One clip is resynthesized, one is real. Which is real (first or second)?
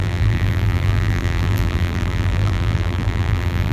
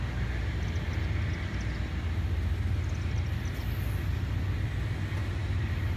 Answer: second